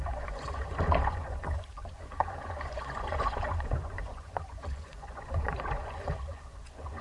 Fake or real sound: fake